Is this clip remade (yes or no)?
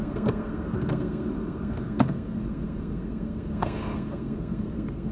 yes